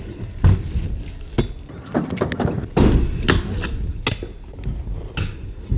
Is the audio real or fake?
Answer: real